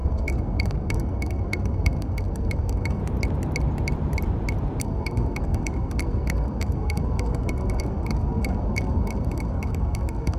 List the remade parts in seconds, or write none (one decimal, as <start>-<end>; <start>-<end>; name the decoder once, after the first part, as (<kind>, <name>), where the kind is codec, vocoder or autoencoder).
0.0-3.0 (codec, SNAC); 4.8-10.4